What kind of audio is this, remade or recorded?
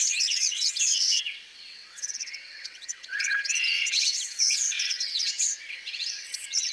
remade